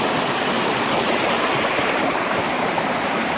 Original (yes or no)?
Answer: no